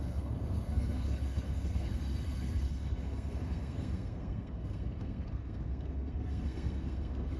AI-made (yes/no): yes